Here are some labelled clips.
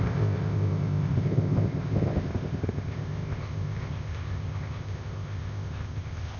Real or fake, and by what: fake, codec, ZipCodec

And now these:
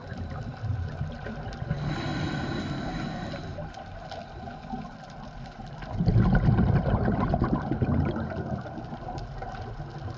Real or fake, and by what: real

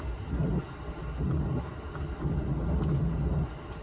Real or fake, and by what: real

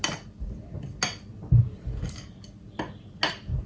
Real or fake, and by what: real